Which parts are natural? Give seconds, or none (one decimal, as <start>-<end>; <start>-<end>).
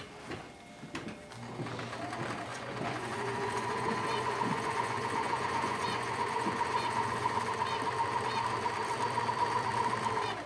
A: 0.0-2.5; 7.4-10.5